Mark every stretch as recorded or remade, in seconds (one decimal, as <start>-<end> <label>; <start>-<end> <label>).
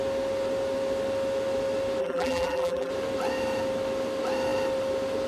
0.0-2.0 recorded; 2.0-2.9 remade; 2.9-5.3 recorded